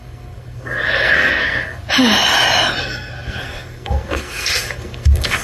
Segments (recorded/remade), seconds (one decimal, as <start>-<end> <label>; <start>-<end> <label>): 0.0-1.8 remade; 1.8-2.8 recorded; 2.8-5.4 remade